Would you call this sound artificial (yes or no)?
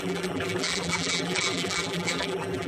yes